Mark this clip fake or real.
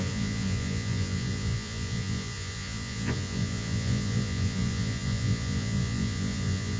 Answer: fake